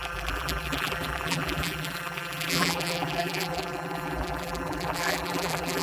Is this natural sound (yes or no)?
no